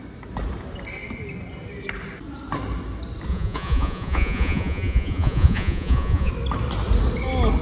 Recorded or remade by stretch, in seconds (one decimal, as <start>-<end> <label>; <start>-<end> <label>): 0.0-3.3 recorded; 3.3-6.3 remade; 6.3-7.6 recorded